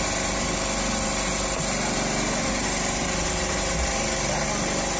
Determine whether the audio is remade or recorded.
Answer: recorded